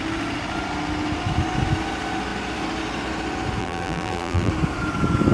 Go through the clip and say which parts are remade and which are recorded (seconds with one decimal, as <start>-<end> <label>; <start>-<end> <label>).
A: 0.0-3.6 recorded; 3.6-4.5 remade; 4.5-5.3 recorded